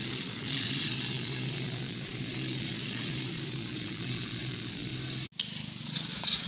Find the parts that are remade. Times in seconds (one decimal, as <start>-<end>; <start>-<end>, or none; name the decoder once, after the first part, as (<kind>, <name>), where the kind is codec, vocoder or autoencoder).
0.0-4.9 (vocoder, Vocos); 5.8-6.5